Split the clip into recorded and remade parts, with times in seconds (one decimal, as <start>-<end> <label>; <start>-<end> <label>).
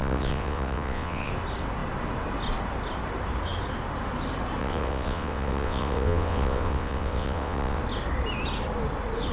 0.0-1.3 remade; 1.3-4.6 recorded; 4.6-7.8 remade; 7.8-9.3 recorded